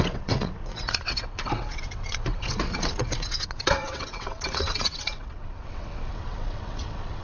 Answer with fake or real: fake